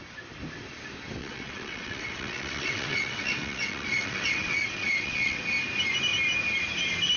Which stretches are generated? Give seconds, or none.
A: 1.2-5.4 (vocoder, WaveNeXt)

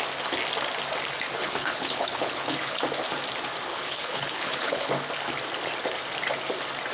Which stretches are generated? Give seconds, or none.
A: 1.4-2.8 (codec, HILCodec); 3.7-4.9

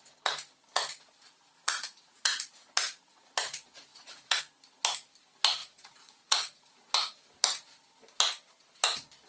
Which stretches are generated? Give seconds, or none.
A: 0.9-2.7 (vocoder, Vocos); 3.9-4.4; 5.6-7.2

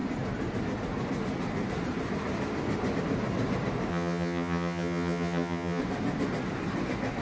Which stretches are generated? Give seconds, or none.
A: 3.9-5.8 (vocoder, HiFi-GAN)

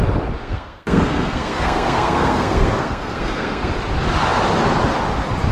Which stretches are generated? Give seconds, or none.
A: 0.4-3.7 (codec, SNAC)

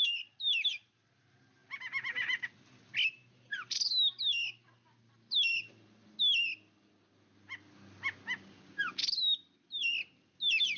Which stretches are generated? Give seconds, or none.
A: none

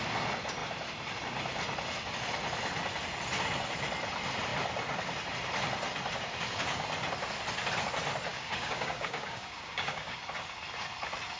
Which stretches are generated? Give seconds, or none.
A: 8.3-10.2 (codec, DAC)

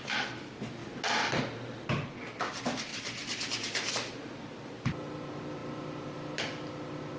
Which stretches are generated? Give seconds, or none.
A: none